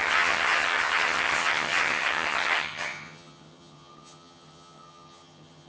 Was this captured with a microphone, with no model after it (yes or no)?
no